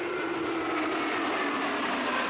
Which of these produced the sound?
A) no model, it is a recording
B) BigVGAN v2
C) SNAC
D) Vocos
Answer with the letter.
A